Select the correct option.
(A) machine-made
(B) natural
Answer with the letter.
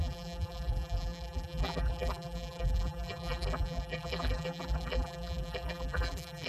A